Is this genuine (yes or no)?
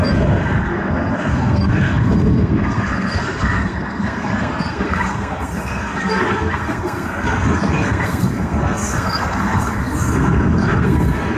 no